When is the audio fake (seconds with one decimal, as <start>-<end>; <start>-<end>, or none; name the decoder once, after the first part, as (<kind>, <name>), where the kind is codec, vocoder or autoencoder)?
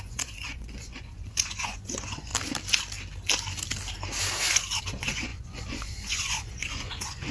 0.0-2.3 (vocoder, Vocos); 4.8-7.3